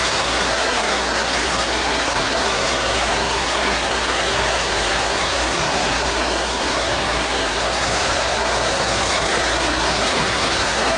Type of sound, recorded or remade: remade